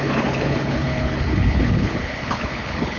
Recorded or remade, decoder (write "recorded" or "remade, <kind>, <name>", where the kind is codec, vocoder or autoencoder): remade, codec, HILCodec